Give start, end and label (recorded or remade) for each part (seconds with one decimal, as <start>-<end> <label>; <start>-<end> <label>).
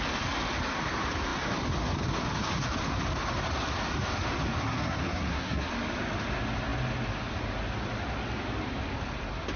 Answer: 0.0-4.6 recorded; 4.6-5.7 remade; 5.7-9.6 recorded